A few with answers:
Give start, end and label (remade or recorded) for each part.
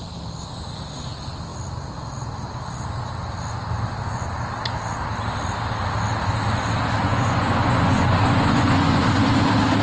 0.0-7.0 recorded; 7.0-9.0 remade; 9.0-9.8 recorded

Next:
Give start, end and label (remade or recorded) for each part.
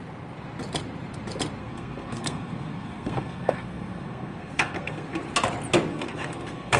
0.0-1.6 recorded; 1.6-5.2 remade; 5.2-5.9 recorded; 5.9-6.8 remade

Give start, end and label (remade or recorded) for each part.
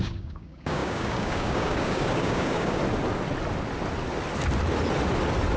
0.0-2.8 remade; 2.8-5.6 recorded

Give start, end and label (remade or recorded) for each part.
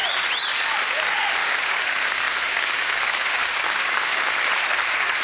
0.0-1.4 recorded; 1.4-4.5 remade; 4.5-5.2 recorded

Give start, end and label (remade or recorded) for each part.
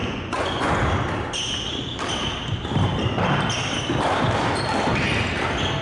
0.0-0.7 remade; 0.7-5.8 recorded